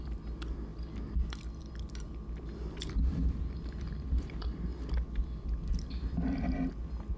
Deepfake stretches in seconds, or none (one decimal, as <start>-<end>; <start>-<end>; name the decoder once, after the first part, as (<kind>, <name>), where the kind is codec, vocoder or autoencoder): none